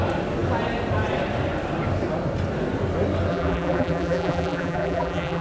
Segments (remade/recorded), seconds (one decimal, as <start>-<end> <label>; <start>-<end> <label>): 0.0-3.3 recorded; 3.3-5.4 remade